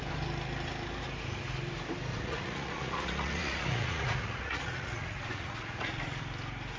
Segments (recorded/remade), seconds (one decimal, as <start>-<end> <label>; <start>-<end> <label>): 0.0-2.1 recorded; 2.1-6.2 remade; 6.2-6.8 recorded

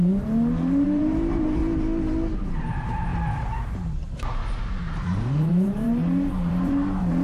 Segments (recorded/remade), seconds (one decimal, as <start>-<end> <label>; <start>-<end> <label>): 0.0-1.6 remade; 1.6-2.5 recorded; 2.5-3.1 remade; 3.1-4.6 recorded; 4.6-7.2 remade

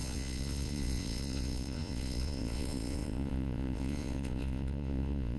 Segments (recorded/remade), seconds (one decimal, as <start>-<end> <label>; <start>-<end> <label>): 0.0-5.4 remade

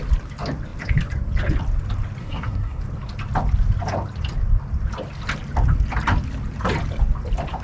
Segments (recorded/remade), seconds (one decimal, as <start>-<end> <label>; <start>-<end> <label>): 0.0-2.2 recorded; 2.2-2.8 remade; 2.8-7.6 recorded

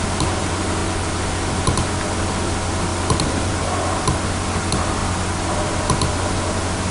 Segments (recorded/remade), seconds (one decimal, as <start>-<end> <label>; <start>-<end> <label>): 0.0-2.9 recorded; 2.9-3.5 remade; 3.5-6.9 recorded

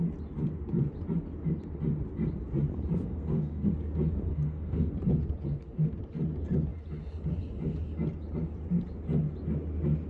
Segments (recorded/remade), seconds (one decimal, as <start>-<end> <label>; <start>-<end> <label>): 0.0-3.0 recorded; 3.0-3.7 remade; 3.7-4.3 recorded; 4.3-4.9 remade; 4.9-10.1 recorded

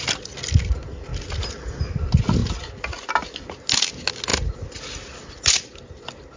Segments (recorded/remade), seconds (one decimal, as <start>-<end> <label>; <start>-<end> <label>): 0.0-6.4 recorded